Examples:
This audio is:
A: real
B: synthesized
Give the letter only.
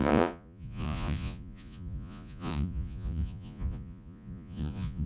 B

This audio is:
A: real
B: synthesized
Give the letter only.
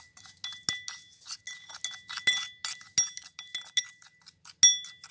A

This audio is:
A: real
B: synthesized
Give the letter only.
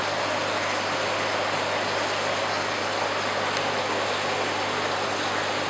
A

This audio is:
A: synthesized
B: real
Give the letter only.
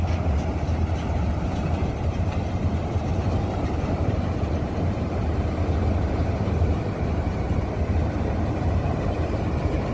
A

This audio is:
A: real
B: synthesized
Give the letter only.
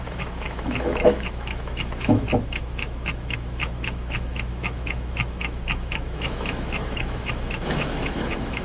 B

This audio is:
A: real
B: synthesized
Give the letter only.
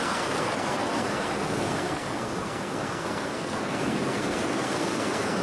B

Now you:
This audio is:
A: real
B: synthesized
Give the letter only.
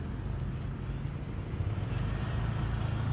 A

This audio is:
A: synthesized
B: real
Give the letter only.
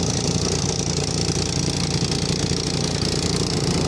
B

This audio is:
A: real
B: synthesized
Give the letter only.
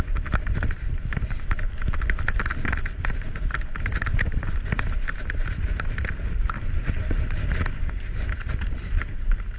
A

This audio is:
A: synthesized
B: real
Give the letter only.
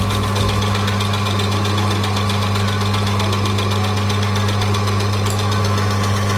B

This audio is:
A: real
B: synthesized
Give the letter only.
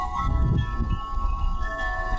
B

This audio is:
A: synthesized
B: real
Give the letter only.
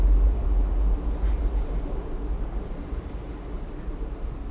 B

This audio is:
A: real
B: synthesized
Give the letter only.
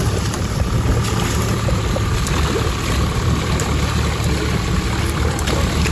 B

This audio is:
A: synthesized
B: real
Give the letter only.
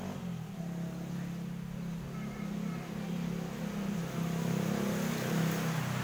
B